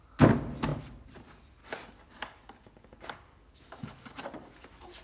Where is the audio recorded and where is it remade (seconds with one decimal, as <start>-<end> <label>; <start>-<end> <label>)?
0.0-1.6 recorded; 1.6-4.6 remade; 4.6-5.0 recorded